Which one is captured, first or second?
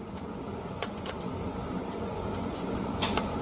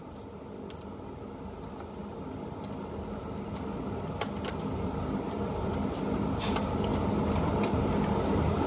second